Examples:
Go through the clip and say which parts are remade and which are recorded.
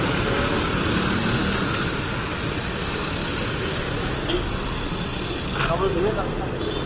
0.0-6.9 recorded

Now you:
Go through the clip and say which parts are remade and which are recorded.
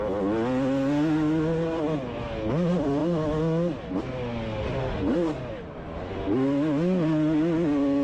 0.0-4.8 recorded; 4.8-5.4 remade; 5.4-8.0 recorded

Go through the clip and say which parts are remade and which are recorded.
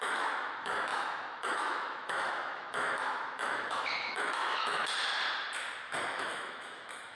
0.0-4.8 remade; 4.8-6.1 recorded; 6.1-7.1 remade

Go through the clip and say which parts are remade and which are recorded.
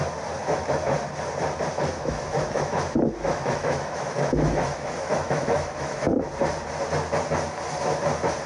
0.0-0.4 recorded; 0.4-1.0 remade; 1.0-2.0 recorded; 2.0-6.2 remade; 6.2-8.5 recorded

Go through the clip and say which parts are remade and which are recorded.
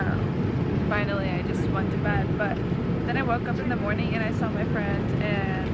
0.0-5.7 recorded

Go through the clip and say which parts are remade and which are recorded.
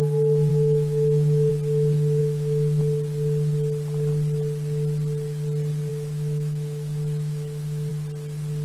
0.0-0.5 recorded; 0.5-1.5 remade; 1.5-2.2 recorded; 2.2-2.8 remade; 2.8-5.9 recorded; 5.9-7.9 remade; 7.9-8.6 recorded